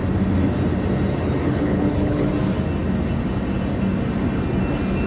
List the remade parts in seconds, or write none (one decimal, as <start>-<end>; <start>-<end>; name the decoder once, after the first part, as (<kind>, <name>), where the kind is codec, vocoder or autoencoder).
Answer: 1.4-2.3 (codec, HILCodec)